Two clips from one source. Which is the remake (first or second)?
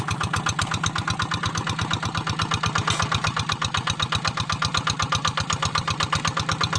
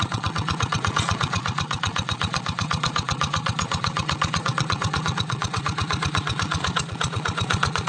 second